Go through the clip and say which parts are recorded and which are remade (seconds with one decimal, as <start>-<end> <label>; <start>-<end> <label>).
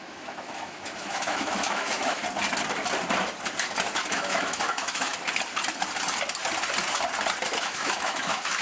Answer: 0.0-2.2 remade; 2.2-4.1 recorded; 4.1-5.1 remade; 5.1-7.6 recorded; 7.6-8.6 remade